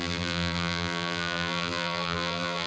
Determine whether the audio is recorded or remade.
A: remade